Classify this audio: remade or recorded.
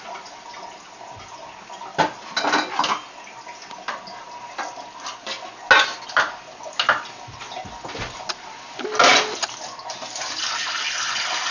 recorded